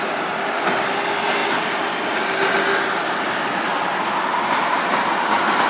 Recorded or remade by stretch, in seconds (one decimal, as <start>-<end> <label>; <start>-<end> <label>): 0.0-1.4 remade; 1.4-2.8 recorded; 2.8-4.3 remade; 4.3-5.1 recorded; 5.1-5.7 remade